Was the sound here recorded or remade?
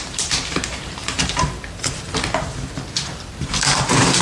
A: remade